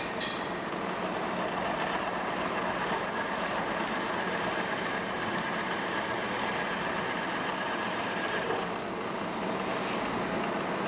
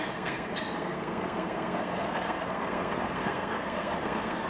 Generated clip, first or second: second